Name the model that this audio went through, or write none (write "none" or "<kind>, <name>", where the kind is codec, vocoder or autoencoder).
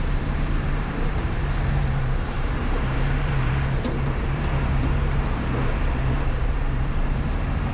vocoder, BigVGAN v2